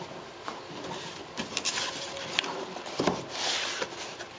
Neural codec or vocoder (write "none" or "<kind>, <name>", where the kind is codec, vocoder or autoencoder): none